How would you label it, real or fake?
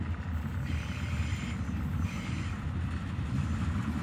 real